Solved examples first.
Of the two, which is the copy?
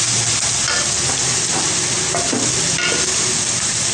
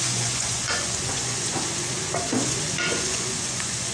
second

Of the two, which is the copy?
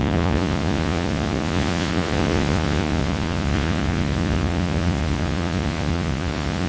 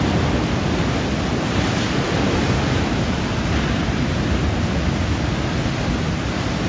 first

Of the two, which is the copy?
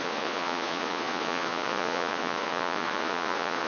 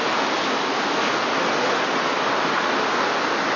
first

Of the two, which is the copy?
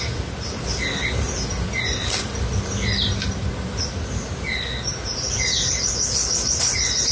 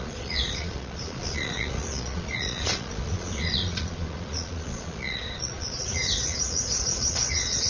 second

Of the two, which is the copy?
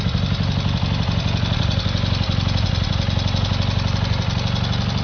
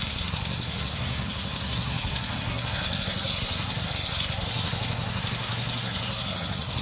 second